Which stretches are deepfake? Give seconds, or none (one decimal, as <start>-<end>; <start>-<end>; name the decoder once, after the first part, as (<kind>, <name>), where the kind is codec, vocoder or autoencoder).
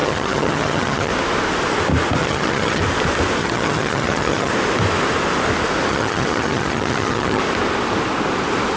0.0-1.1 (vocoder, HiFi-GAN); 2.2-2.8; 3.4-4.5; 5.9-7.4